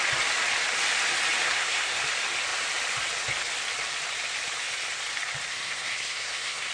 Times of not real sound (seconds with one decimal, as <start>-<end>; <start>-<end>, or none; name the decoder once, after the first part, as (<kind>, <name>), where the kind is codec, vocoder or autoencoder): 1.4-2.0 (codec, SNAC); 5.5-6.7